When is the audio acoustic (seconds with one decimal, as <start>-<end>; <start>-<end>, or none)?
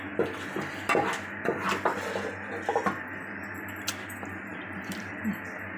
0.0-4.5; 5.3-5.8